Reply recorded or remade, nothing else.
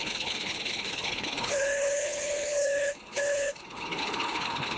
remade